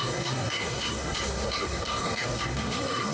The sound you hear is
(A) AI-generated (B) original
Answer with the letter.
A